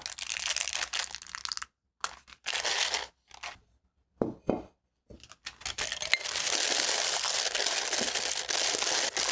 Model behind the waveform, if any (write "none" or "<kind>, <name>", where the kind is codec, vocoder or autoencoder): none